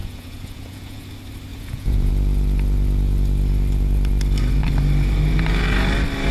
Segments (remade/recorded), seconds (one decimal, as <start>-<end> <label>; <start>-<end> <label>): 0.0-1.1 remade; 1.1-1.5 recorded; 1.5-2.1 remade; 2.1-6.3 recorded